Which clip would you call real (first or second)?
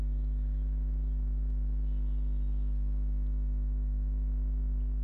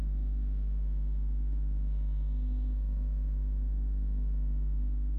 first